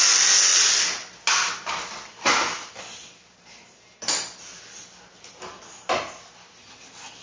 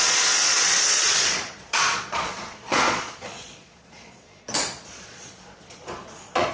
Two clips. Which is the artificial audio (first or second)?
second